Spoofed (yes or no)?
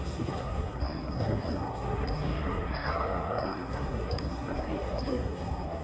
yes